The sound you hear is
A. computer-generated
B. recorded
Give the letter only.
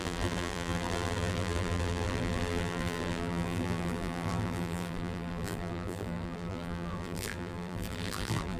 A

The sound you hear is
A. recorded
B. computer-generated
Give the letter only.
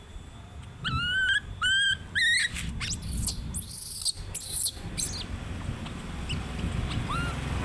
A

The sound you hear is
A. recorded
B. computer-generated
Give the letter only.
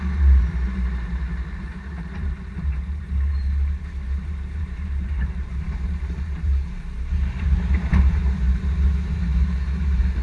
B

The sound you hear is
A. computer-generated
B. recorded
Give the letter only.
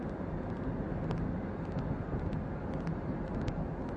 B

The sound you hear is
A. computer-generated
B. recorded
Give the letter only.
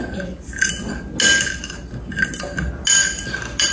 B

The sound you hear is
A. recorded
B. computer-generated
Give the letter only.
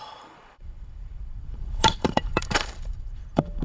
B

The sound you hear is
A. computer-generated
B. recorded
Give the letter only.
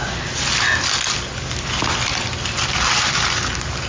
B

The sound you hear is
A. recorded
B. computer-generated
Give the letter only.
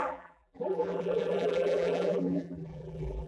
B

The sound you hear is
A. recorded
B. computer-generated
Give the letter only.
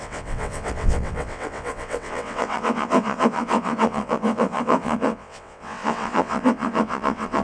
B